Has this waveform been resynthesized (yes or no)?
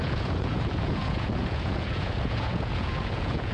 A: yes